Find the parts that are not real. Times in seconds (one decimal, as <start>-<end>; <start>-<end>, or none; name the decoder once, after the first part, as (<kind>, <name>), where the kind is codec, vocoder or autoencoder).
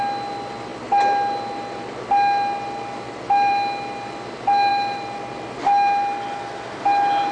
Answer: 4.7-5.3 (vocoder, BigVGAN v2)